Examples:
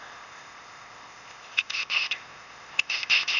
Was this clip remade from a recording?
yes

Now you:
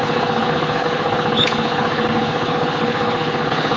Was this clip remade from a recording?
yes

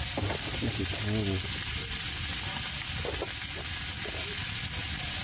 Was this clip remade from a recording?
no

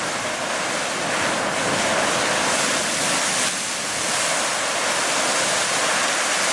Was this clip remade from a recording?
no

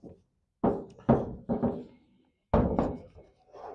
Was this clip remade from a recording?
no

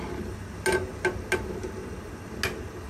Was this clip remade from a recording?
no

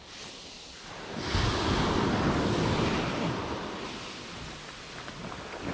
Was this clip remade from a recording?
no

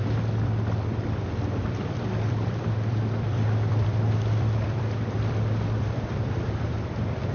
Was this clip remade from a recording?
yes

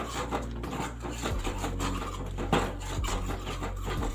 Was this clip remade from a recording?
no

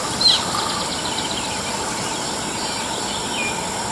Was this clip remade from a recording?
no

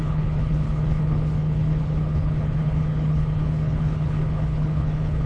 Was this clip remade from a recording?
yes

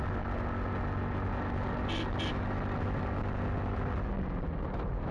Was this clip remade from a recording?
no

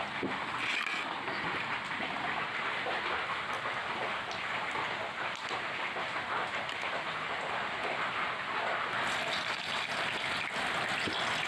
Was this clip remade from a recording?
no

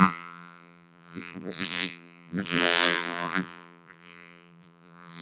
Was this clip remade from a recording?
yes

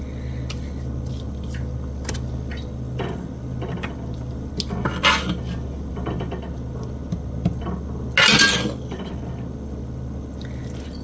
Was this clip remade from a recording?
no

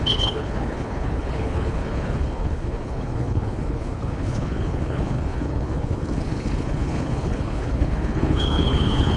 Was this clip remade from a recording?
yes